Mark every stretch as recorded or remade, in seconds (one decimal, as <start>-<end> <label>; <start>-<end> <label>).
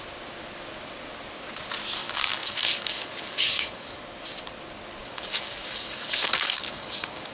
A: 0.0-2.0 recorded; 2.0-4.0 remade; 4.0-5.0 recorded; 5.0-7.3 remade